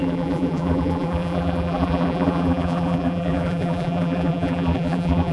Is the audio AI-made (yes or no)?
yes